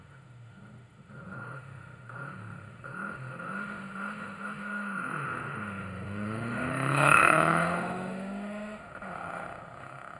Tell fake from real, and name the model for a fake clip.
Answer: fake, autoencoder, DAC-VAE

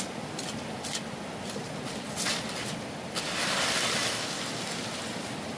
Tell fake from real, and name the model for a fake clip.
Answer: real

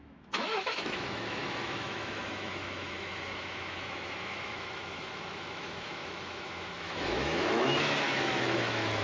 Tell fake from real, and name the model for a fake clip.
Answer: fake, autoencoder, DAC-VAE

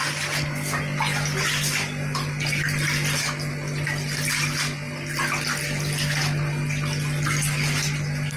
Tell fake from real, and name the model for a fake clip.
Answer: real